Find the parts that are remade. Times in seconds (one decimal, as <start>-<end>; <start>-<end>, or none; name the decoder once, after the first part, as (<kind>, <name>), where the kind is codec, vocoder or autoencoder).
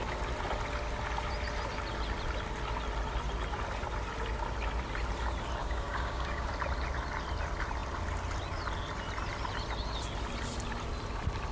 5.6-6.5 (codec, DAC)